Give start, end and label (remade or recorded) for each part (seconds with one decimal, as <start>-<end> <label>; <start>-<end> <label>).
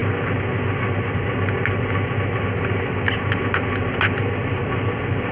0.0-5.3 recorded